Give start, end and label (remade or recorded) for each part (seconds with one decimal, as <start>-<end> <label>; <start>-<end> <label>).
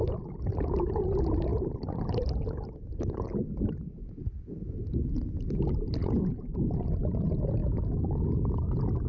0.0-6.0 recorded; 6.0-6.5 remade; 6.5-9.1 recorded